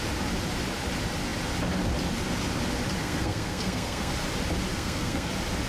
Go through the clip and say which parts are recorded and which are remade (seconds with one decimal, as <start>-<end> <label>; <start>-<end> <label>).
0.0-3.0 recorded; 3.0-4.1 remade; 4.1-4.7 recorded; 4.7-5.3 remade; 5.3-5.7 recorded